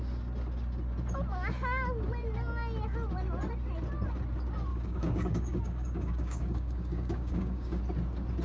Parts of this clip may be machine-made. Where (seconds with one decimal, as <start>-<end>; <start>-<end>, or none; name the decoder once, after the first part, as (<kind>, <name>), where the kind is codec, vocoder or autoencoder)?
4.7-7.8 (codec, DAC)